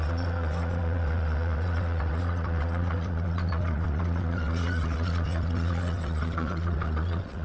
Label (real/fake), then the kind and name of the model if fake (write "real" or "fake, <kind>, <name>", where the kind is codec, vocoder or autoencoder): fake, vocoder, WaveNeXt